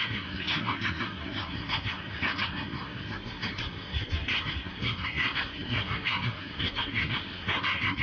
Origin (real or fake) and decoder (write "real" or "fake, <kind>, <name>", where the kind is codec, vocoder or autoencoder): fake, codec, SNAC